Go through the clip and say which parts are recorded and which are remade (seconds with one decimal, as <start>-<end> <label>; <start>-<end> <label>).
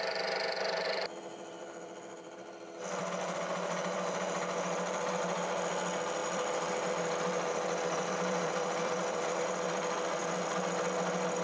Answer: 0.0-1.3 recorded; 1.3-5.4 remade; 5.4-6.2 recorded; 6.2-9.4 remade; 9.4-11.4 recorded